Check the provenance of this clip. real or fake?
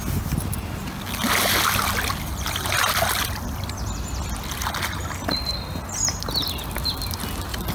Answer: real